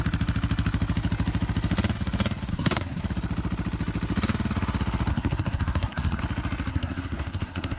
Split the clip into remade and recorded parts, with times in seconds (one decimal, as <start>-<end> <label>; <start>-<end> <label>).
0.0-2.5 recorded; 2.5-3.0 remade; 3.0-5.1 recorded; 5.1-6.2 remade; 6.2-6.7 recorded; 6.7-7.8 remade

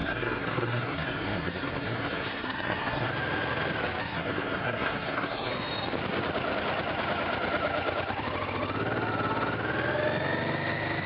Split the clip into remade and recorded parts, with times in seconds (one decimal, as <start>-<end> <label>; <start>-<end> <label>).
0.0-3.1 remade; 3.1-4.0 recorded; 4.0-5.5 remade; 5.5-11.1 recorded

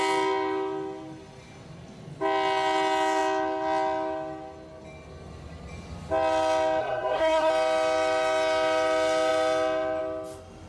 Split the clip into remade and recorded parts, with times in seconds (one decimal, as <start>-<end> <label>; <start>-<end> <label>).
0.0-6.8 recorded; 6.8-7.5 remade; 7.5-10.7 recorded

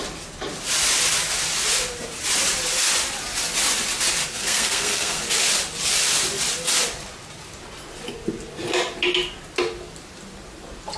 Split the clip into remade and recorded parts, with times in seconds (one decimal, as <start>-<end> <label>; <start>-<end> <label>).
0.0-4.3 recorded; 4.3-5.2 remade; 5.2-11.0 recorded

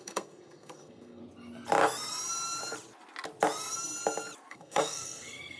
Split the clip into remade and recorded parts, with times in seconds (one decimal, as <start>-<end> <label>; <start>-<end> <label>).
0.0-1.2 remade; 1.2-4.5 recorded; 4.5-5.6 remade

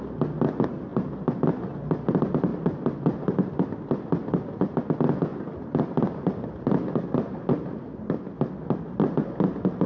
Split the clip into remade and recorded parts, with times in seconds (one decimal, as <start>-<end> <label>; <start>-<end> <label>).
0.0-9.9 recorded

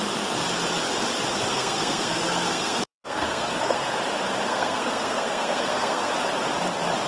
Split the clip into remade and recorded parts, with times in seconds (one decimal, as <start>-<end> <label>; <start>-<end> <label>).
0.0-1.5 recorded; 1.5-3.9 remade; 3.9-4.5 recorded; 4.5-6.1 remade; 6.1-7.1 recorded

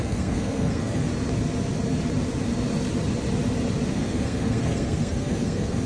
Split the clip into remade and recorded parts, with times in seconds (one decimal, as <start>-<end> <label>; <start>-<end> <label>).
0.0-1.1 remade; 1.1-3.9 recorded; 3.9-5.9 remade